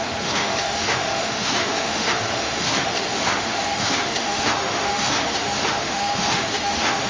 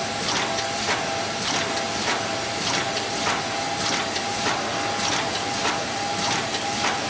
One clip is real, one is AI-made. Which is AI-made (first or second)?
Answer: first